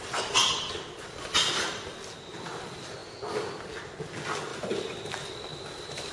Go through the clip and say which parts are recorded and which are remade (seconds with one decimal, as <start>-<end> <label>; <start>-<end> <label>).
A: 0.0-6.1 recorded